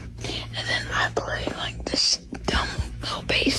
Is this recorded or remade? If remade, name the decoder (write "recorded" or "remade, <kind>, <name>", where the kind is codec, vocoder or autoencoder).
remade, autoencoder, DAC-VAE